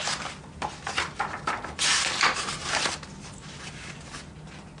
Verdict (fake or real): real